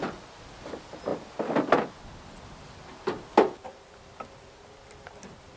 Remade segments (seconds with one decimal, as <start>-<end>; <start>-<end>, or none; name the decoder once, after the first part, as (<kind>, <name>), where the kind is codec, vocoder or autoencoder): none